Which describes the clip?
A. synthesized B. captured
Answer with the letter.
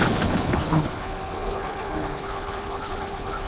A